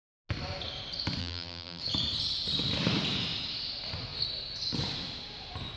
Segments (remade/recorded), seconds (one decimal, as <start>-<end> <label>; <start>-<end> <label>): 0.0-1.2 recorded; 1.2-1.8 remade; 1.8-5.8 recorded